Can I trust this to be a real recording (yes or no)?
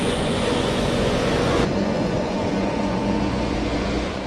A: no